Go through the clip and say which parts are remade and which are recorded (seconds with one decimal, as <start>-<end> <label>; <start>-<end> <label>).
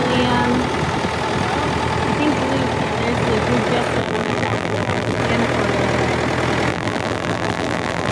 0.0-4.0 recorded; 4.0-5.2 remade; 5.2-6.7 recorded; 6.7-8.1 remade